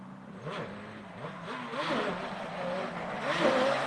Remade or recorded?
recorded